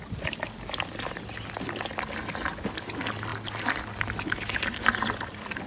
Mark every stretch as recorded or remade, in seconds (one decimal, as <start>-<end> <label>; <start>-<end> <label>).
0.0-5.7 recorded